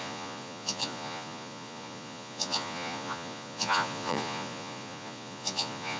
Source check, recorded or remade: remade